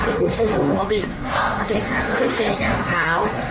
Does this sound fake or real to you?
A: fake